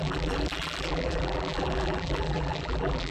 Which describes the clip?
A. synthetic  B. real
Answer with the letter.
A